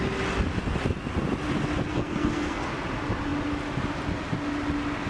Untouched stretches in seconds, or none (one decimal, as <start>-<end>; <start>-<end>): 0.0-1.9; 2.7-5.1

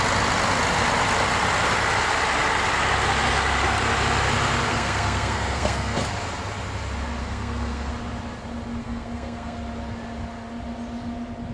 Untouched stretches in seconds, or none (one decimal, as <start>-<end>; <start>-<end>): 0.0-4.7; 6.1-7.2; 7.9-8.8; 9.6-11.5

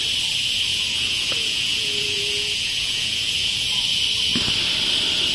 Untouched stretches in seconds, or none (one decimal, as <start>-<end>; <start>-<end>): 0.0-0.7; 3.9-5.3

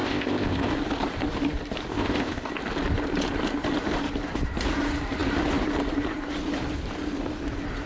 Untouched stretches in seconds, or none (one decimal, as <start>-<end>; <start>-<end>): 0.7-1.9; 2.5-7.9

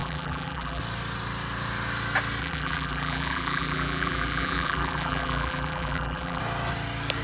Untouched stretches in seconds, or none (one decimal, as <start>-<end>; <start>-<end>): 0.8-2.4; 6.4-7.2

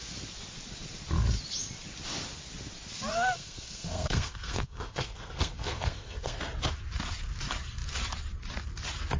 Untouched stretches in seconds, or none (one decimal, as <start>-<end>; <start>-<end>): 0.0-3.1; 6.4-9.2

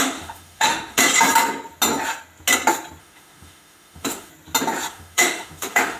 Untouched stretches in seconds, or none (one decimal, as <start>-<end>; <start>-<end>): 1.0-3.0; 4.3-4.9